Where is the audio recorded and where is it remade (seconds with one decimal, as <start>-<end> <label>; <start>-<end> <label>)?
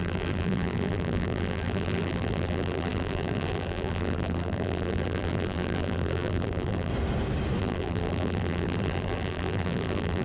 0.0-6.9 remade; 6.9-7.6 recorded; 7.6-10.2 remade